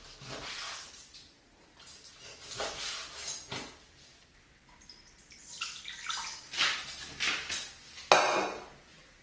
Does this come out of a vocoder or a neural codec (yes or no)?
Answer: no